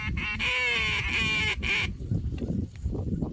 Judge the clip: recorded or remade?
recorded